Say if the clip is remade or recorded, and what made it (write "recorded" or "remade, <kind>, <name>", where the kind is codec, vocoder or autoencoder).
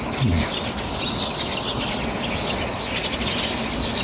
recorded